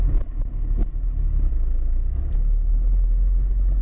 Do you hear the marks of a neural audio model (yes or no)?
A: no